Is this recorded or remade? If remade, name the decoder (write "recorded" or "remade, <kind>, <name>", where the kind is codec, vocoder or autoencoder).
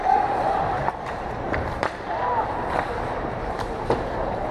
remade, vocoder, BigVGAN v2